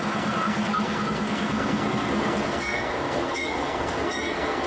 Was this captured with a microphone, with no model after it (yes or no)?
no